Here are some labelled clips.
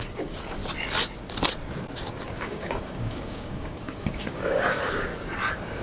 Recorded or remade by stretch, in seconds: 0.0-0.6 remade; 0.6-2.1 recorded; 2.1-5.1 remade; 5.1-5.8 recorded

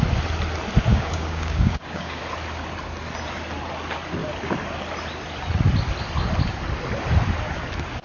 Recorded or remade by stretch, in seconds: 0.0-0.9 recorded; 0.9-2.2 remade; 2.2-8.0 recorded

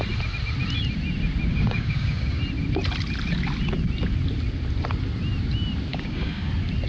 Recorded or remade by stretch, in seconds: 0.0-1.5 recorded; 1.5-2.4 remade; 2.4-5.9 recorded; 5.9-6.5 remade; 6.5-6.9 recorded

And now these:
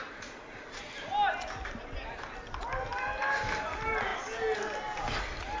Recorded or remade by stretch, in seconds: 0.0-5.6 recorded

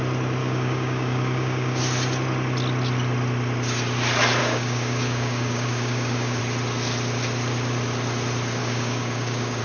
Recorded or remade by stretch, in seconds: 0.0-0.4 recorded; 0.4-1.8 remade; 1.8-4.4 recorded; 4.4-6.4 remade; 6.4-8.6 recorded; 8.6-9.6 remade

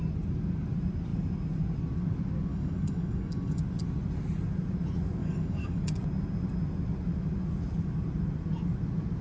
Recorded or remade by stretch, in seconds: 0.0-2.5 recorded; 2.5-3.6 remade; 3.6-5.2 recorded; 5.2-5.8 remade; 5.8-9.2 recorded

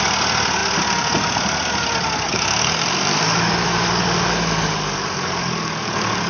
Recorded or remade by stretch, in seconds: 0.0-2.3 recorded; 2.3-6.3 remade